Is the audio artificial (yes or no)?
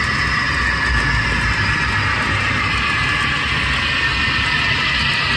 no